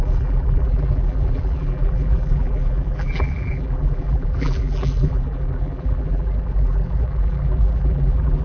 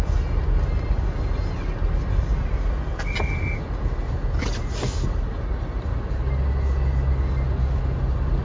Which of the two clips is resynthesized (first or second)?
first